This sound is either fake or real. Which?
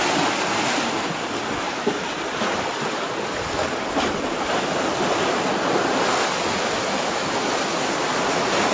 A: real